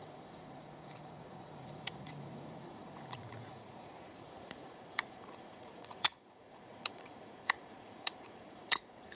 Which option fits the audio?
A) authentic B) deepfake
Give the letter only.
B